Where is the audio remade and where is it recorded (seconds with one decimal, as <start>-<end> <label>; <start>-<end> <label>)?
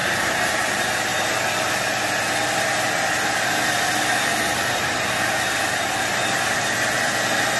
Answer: 0.0-0.5 remade; 0.5-7.6 recorded